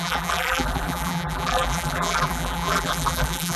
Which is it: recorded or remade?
remade